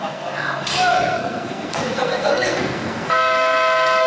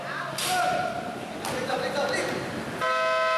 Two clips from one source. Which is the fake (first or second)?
first